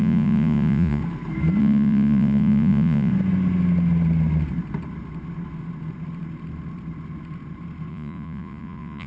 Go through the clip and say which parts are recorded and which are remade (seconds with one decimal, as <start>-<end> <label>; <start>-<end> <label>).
0.0-1.0 remade; 1.0-1.6 recorded; 1.6-3.1 remade; 3.1-7.9 recorded; 7.9-9.1 remade